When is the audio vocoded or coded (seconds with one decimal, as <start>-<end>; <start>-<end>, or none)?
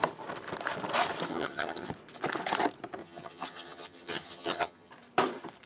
1.3-1.9; 3.0-4.9